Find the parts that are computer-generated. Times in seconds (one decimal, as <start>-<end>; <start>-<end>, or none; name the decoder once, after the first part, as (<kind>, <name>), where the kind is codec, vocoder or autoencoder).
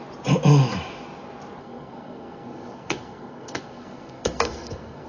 1.6-5.1 (codec, SNAC)